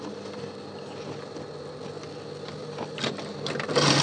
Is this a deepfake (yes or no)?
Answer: no